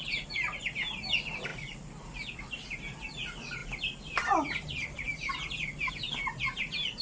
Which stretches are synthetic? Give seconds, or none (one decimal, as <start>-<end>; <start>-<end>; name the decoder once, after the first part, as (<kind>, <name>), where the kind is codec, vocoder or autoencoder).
none